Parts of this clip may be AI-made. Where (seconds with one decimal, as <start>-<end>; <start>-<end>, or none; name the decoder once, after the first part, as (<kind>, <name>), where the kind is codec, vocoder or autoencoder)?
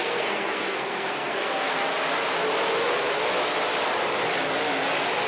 0.0-1.8 (codec, SNAC)